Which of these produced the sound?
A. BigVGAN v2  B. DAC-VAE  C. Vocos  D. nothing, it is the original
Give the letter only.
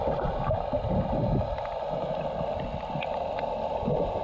D